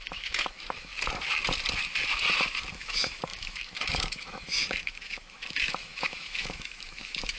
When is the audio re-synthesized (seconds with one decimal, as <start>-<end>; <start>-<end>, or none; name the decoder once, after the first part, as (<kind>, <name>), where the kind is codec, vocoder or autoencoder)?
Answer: 0.0-0.9 (autoencoder, DAC-VAE); 2.7-7.4